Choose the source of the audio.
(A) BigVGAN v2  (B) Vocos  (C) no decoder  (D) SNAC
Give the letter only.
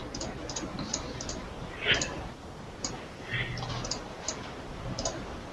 C